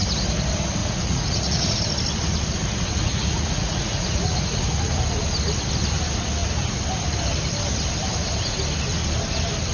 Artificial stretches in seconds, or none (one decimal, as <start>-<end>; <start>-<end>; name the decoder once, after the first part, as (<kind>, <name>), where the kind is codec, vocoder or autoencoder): 0.8-1.8 (vocoder, Vocos); 3.0-5.0